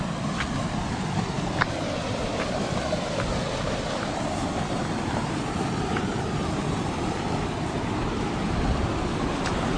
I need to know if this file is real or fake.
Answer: fake